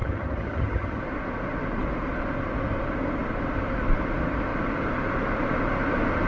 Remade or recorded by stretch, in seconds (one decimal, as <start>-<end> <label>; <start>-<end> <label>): 0.0-1.0 remade; 1.0-6.3 recorded